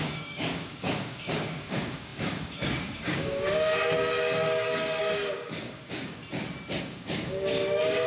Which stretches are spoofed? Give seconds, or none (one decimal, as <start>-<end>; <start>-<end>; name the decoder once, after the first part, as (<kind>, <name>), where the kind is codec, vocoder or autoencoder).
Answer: 0.0-6.2 (codec, DAC); 6.8-8.1